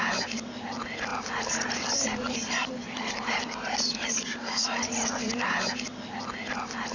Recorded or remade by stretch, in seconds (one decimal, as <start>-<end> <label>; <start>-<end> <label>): 0.0-6.9 recorded